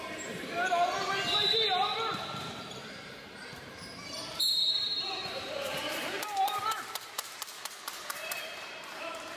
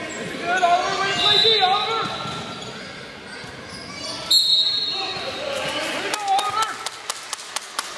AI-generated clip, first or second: first